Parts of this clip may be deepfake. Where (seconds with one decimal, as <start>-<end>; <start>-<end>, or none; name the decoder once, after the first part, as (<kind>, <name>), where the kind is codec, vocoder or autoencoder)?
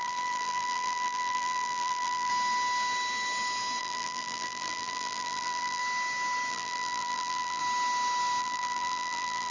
0.0-2.3 (vocoder, BigVGAN v2); 3.8-5.8; 6.5-7.6; 8.4-9.5